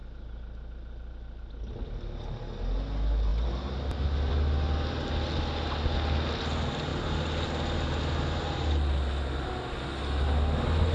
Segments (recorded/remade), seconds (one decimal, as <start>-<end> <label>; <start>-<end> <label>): 0.0-10.9 recorded